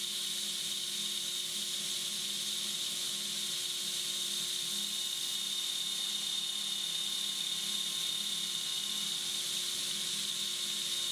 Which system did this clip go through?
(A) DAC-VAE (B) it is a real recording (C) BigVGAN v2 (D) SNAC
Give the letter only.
B